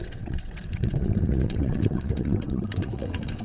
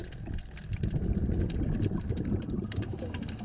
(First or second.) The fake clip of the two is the first